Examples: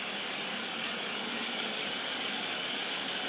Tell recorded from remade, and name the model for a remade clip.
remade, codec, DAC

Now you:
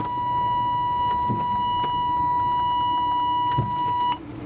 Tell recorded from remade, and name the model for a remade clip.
recorded